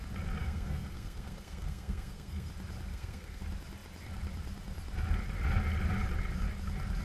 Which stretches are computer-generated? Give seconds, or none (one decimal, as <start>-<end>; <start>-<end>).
0.4-2.5; 2.9-3.4